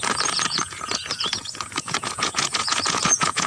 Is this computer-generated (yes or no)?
yes